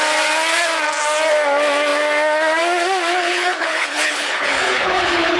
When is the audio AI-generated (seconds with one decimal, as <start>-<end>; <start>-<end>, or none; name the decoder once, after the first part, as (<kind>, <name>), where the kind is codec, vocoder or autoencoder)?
3.1-5.4 (codec, HILCodec)